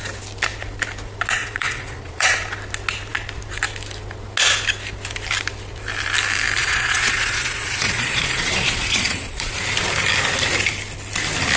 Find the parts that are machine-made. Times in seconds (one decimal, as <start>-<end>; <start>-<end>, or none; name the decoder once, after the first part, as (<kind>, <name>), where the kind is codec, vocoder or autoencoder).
1.4-2.3 (vocoder, Vocos); 6.6-9.5